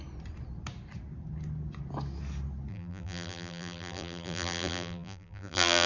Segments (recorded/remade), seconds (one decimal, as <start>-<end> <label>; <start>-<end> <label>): 0.0-2.7 recorded; 2.7-5.9 remade